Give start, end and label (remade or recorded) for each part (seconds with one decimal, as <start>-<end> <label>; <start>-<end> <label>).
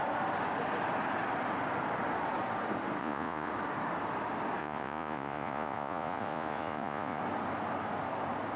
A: 0.0-3.0 recorded; 3.0-3.5 remade; 3.5-4.6 recorded; 4.6-7.2 remade; 7.2-8.6 recorded